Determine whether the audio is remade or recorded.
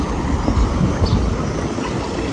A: recorded